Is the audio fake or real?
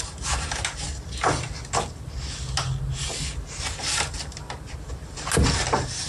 real